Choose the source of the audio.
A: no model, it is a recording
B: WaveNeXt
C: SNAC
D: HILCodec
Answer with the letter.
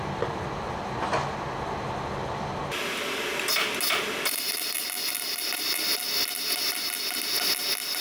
A